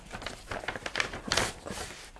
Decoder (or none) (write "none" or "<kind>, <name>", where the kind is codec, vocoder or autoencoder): none